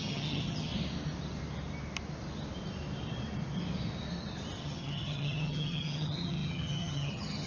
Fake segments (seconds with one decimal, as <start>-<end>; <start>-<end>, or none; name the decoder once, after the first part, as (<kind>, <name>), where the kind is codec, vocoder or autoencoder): 0.0-0.7 (vocoder, HiFi-GAN); 4.6-7.5